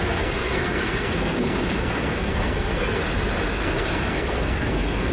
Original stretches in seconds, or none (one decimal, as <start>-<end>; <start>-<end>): 3.0-3.5